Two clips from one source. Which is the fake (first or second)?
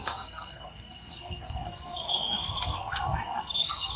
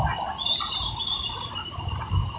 first